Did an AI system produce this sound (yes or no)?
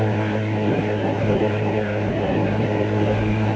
yes